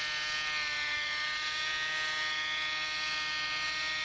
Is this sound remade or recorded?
recorded